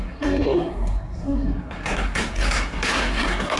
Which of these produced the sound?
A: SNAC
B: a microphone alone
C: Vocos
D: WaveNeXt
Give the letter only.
A